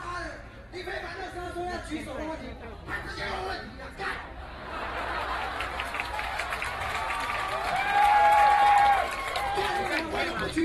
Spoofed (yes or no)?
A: yes